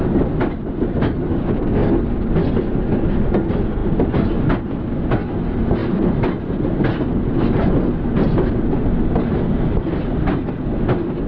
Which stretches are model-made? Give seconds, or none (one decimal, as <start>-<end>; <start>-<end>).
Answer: 1.3-1.9